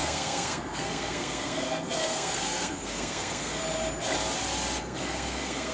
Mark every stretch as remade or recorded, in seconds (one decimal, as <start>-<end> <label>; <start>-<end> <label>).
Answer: 0.0-3.6 remade; 3.6-4.8 recorded; 4.8-5.7 remade